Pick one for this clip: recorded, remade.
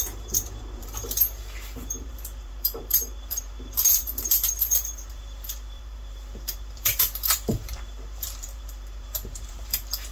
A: remade